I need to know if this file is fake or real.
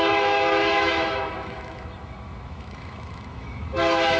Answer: fake